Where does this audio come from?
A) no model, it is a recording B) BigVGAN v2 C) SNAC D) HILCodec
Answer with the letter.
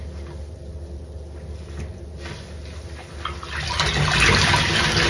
A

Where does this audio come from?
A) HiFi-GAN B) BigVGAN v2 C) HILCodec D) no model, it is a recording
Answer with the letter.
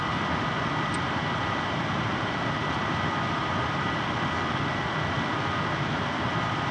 D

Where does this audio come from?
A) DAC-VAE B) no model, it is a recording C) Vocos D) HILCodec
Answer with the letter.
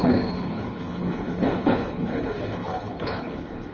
D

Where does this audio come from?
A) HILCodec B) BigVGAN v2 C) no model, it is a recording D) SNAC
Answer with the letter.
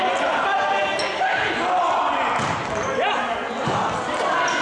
C